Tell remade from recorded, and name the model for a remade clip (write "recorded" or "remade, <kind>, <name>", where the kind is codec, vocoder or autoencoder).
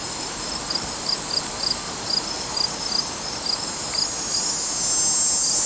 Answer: recorded